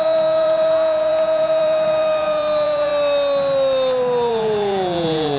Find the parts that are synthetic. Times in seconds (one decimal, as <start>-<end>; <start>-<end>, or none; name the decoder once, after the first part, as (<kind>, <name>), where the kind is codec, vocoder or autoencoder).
0.0-2.9 (vocoder, Vocos); 4.3-5.4